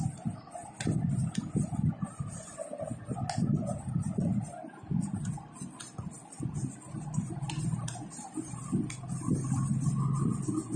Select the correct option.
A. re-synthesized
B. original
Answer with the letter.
B